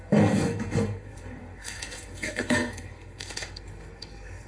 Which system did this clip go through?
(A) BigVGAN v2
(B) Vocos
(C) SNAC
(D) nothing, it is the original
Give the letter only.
C